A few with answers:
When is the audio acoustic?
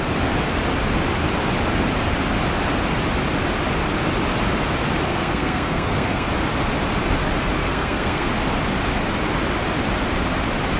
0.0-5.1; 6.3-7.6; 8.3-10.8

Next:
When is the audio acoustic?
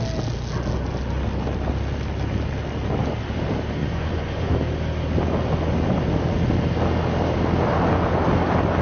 0.0-3.8; 4.5-8.8